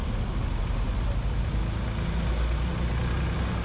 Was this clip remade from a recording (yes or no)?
no